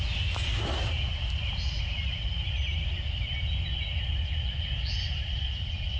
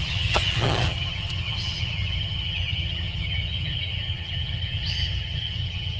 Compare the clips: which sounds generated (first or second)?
second